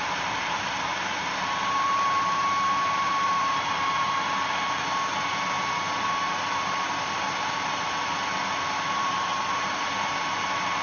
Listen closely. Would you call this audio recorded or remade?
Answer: remade